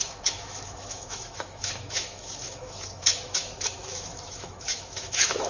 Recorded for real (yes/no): no